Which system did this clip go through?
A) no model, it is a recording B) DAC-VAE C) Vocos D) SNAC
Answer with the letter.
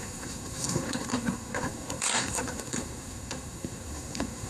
D